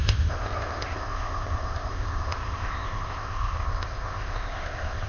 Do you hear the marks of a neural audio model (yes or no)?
yes